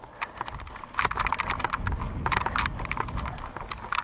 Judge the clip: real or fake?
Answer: real